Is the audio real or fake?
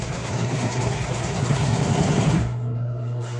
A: fake